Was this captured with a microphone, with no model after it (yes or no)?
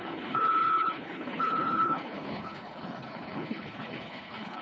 no